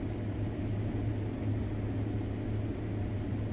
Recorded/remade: recorded